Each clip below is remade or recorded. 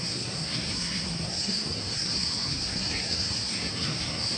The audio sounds remade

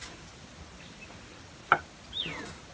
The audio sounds recorded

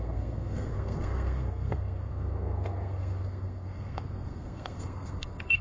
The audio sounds remade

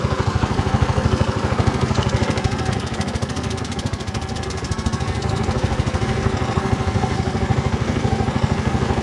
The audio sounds remade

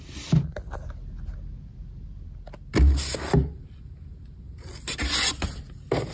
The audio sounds recorded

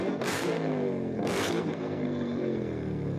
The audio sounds remade